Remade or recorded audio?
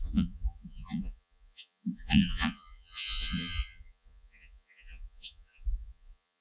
remade